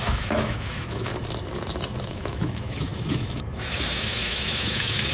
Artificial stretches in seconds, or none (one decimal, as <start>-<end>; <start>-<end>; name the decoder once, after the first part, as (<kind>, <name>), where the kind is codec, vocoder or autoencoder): 0.0-1.1 (autoencoder, DAC-VAE); 2.0-5.1